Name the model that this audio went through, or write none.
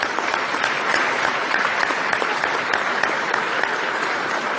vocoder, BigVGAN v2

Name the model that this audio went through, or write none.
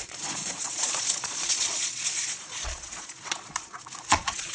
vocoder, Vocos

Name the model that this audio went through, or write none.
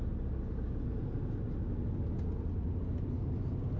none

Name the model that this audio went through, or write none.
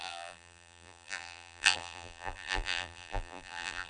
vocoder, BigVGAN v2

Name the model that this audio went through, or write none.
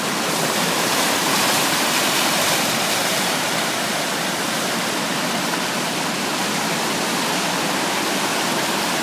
vocoder, BigVGAN v2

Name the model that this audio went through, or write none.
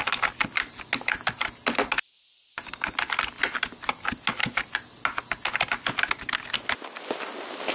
none